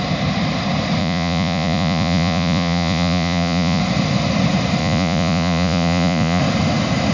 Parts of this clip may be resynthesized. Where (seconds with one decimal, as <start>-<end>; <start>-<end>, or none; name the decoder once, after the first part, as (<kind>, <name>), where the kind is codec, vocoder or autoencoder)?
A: 1.0-3.8 (vocoder, Vocos); 4.8-6.4